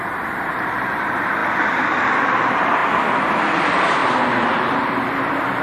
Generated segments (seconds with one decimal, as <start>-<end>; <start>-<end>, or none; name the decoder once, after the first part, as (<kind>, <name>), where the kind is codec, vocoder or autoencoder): 0.0-1.4 (vocoder, BigVGAN v2); 2.0-2.8; 3.4-4.0; 4.5-5.6